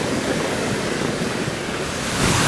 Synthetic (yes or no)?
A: yes